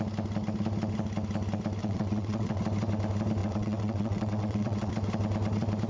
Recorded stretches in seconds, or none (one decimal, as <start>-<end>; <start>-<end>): 0.0-1.8; 2.6-3.4; 4.9-5.9